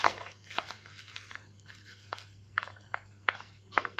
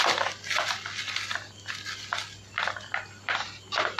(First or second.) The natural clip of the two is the second